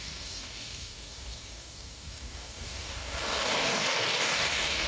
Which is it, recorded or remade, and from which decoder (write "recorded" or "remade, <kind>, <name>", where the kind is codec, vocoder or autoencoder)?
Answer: remade, codec, DAC